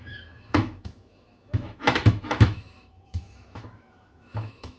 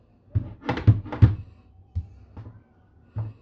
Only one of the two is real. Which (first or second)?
second